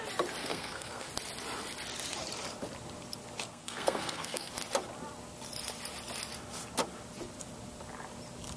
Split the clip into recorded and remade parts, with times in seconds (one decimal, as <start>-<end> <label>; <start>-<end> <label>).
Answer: 0.0-0.4 recorded; 0.4-1.1 remade; 1.1-3.5 recorded; 3.5-4.5 remade; 4.5-8.6 recorded